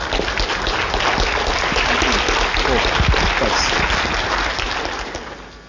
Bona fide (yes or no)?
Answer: yes